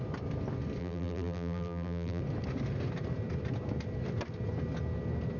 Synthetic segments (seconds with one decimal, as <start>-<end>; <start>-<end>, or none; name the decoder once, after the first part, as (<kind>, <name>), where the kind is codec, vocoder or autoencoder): 0.8-2.2 (vocoder, BigVGAN v2)